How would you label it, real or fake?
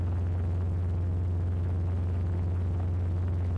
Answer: real